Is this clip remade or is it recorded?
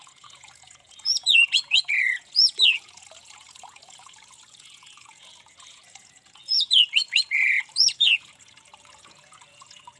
remade